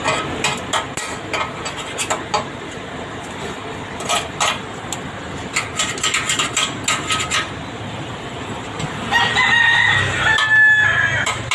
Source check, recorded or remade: recorded